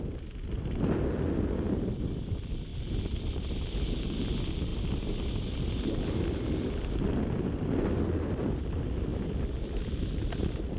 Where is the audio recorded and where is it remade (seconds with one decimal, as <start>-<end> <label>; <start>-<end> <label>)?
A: 0.0-10.8 recorded